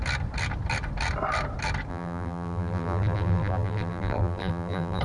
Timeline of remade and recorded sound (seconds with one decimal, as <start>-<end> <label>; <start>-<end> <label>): 0.0-1.9 recorded; 1.9-5.0 remade